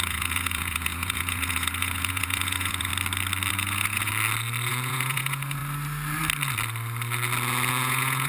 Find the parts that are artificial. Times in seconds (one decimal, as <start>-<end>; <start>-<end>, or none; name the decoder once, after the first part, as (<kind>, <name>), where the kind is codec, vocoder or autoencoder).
0.0-2.9 (vocoder, Vocos); 3.5-4.1; 4.7-5.6; 7.7-8.3